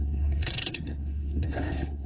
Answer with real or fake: fake